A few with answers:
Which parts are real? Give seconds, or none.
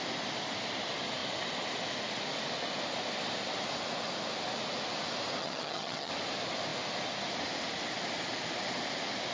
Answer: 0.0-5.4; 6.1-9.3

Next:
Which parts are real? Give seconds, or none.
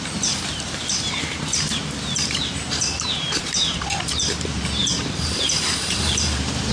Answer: none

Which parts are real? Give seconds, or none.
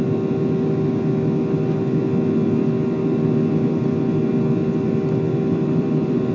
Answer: 0.0-3.0; 4.0-5.3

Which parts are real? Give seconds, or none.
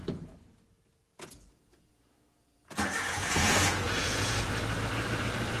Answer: 0.0-1.1; 4.4-5.6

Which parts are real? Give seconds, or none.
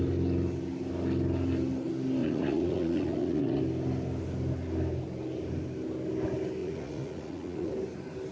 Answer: 0.0-2.2; 3.6-6.6; 7.7-8.3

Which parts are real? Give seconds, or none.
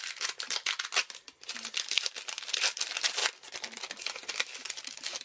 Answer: 0.0-5.2